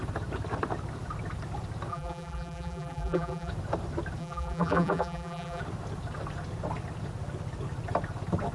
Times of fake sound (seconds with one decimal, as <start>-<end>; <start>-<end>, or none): 1.9-3.5; 4.2-5.6